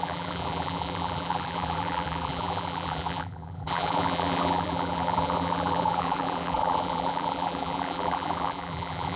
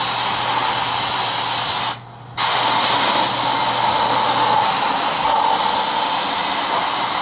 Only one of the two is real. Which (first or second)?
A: second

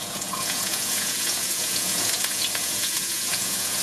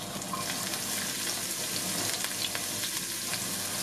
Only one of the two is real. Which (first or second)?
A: second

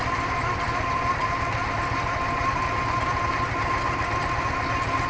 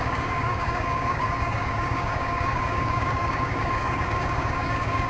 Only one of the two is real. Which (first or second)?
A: first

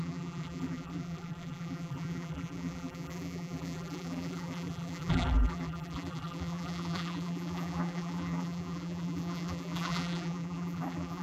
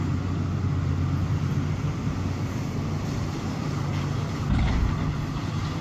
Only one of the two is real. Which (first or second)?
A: second